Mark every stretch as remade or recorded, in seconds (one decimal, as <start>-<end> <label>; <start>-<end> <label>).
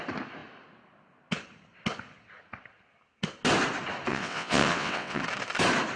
0.0-4.1 recorded; 4.1-5.2 remade; 5.2-6.0 recorded